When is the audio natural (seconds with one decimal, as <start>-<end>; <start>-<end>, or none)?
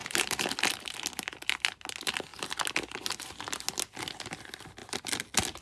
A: 0.5-5.6